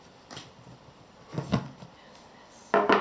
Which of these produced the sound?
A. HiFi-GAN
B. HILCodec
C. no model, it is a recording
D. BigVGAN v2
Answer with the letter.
C